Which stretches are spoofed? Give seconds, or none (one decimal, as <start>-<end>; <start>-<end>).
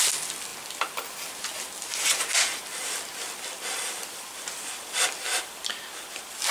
5.3-5.9